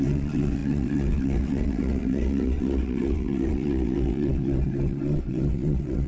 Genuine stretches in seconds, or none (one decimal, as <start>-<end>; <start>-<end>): none